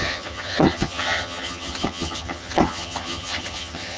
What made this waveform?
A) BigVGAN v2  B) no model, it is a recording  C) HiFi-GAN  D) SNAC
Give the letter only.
C